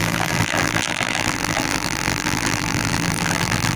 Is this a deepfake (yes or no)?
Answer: yes